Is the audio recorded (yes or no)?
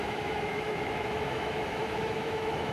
no